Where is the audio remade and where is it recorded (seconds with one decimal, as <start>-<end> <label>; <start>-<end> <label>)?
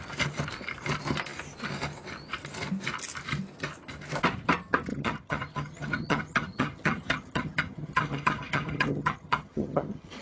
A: 0.0-4.9 recorded; 4.9-10.2 remade